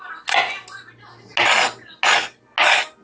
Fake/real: real